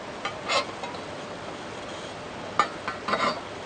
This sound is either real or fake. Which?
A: real